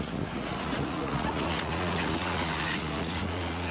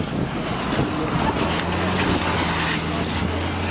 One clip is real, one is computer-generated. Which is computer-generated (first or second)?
first